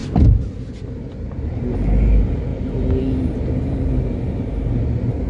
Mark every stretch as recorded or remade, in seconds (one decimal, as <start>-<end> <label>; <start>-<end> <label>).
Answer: 0.0-5.3 recorded